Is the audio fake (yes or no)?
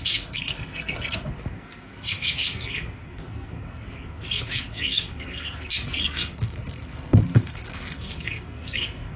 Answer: yes